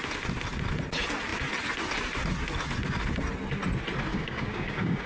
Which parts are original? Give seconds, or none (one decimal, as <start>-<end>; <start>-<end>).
0.0-4.1